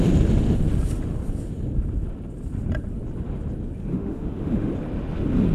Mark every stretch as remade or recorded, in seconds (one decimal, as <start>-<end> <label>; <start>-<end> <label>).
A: 0.0-3.9 recorded; 3.9-4.7 remade; 4.7-5.5 recorded